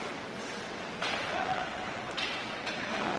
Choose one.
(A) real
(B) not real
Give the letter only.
B